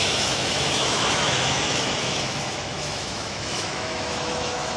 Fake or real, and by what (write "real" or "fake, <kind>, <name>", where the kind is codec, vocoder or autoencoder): fake, autoencoder, DAC-VAE